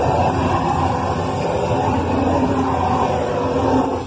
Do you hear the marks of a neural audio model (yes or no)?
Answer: no